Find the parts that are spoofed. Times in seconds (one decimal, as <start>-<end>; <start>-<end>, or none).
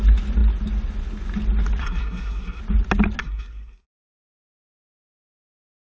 1.8-2.6; 3.2-4.9